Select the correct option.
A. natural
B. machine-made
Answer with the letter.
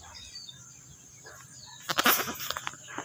A